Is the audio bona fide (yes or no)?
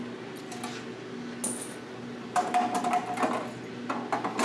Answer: yes